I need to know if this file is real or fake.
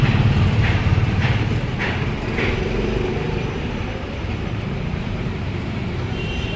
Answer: fake